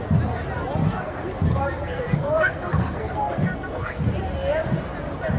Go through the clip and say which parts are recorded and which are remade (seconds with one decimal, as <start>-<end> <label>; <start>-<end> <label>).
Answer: 0.0-0.8 recorded; 0.8-4.0 remade; 4.0-5.4 recorded